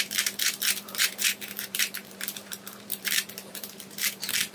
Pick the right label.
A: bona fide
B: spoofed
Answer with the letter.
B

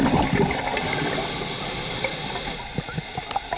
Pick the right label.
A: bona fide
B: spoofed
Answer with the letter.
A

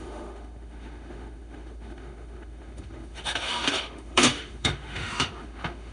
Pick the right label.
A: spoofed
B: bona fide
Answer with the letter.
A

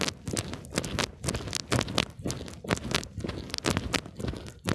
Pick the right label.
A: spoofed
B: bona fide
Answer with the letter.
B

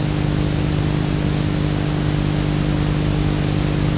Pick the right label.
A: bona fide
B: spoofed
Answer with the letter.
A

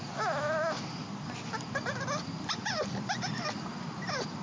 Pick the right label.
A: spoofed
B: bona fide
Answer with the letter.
B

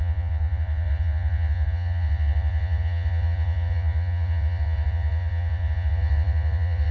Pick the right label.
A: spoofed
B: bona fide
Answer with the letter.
A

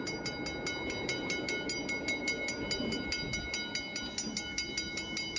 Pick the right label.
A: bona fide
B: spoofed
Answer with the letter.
A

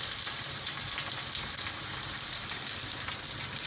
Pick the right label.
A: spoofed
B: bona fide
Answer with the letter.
B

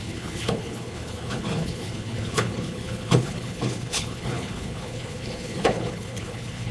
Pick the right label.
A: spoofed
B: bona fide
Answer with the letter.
A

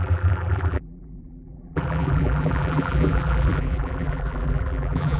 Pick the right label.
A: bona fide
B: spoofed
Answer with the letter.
B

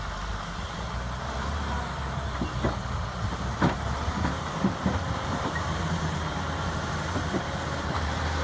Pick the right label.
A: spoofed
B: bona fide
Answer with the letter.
A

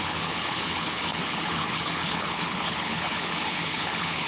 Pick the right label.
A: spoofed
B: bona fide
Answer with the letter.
A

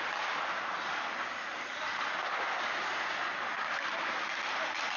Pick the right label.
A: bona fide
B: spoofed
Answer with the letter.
A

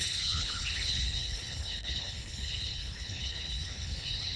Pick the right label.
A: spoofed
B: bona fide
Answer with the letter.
A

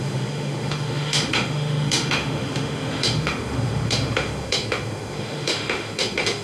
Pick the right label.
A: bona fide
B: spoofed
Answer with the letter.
B